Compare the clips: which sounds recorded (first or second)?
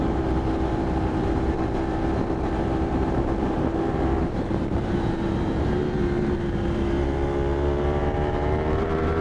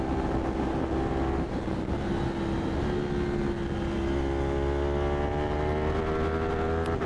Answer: second